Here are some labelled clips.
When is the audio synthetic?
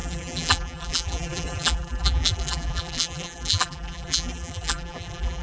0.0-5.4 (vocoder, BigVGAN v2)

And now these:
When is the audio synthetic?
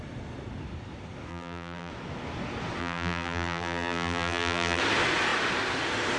1.3-1.9 (vocoder, BigVGAN v2); 2.8-4.8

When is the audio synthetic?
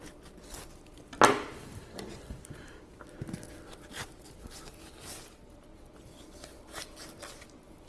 1.7-2.2 (vocoder, BigVGAN v2)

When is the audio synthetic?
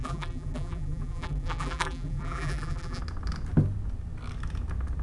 0.0-3.0 (vocoder, BigVGAN v2)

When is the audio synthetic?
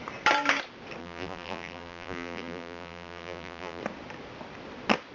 1.0-3.8 (vocoder, BigVGAN v2)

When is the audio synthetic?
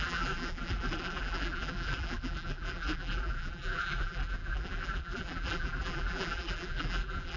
0.0-7.4 (vocoder, BigVGAN v2)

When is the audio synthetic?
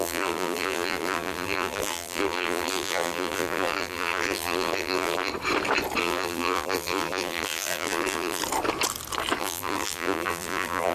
0.0-5.3 (vocoder, BigVGAN v2); 6.0-8.4; 9.4-10.9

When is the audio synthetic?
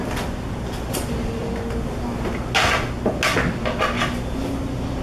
0.0-1.4 (vocoder, BigVGAN v2); 4.4-5.0